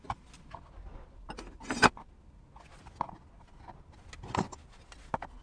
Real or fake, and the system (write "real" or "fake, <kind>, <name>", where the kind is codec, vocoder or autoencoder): real